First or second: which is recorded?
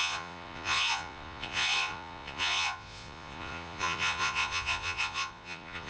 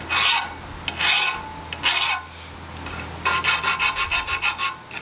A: second